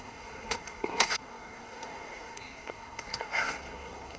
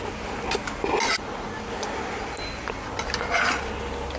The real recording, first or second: second